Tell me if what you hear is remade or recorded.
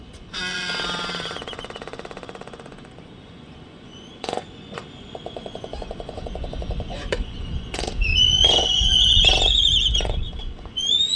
remade